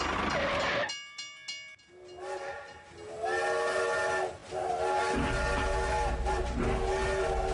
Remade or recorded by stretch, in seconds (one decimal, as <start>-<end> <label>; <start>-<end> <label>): 0.0-2.5 recorded; 2.5-3.0 remade; 3.0-7.5 recorded